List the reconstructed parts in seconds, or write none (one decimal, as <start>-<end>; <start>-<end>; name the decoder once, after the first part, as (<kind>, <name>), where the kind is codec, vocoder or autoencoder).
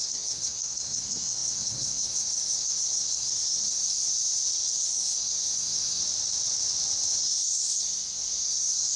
0.0-4.1 (codec, SNAC); 4.7-6.0; 7.2-9.0